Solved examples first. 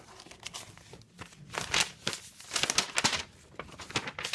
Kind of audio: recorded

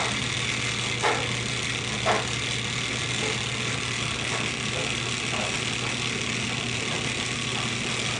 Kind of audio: recorded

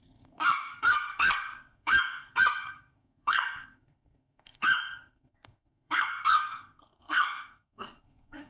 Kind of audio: remade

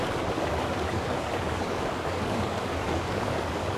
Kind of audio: remade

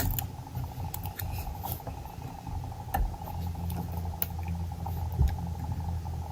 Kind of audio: recorded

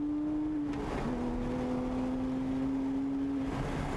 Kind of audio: recorded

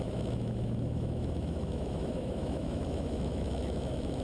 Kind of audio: remade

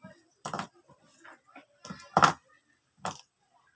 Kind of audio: recorded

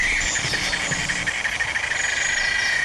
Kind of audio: recorded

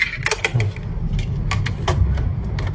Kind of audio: recorded